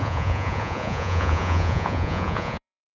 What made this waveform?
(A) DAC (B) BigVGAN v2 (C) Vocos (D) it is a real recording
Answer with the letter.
C